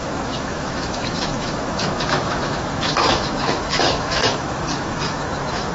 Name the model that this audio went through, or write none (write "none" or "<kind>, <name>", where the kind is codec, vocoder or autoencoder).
autoencoder, DAC-VAE